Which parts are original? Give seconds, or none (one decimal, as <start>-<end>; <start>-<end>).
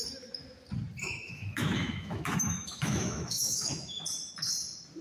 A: 0.0-1.0; 4.0-5.0